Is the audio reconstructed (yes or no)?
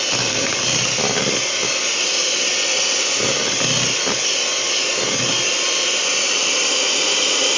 no